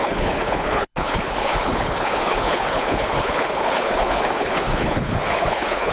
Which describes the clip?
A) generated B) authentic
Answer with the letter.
A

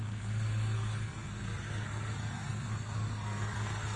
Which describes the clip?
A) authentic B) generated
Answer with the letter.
B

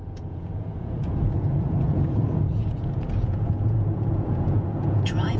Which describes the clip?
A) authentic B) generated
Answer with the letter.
B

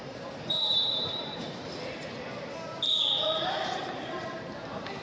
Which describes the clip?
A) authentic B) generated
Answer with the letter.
B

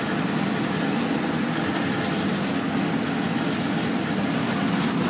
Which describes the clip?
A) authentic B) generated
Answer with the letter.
A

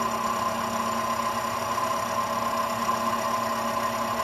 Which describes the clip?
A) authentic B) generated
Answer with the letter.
A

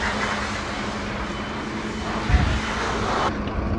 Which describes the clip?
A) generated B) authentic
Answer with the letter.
B